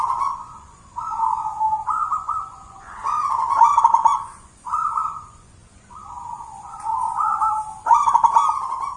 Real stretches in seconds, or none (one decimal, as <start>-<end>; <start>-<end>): 8.4-9.0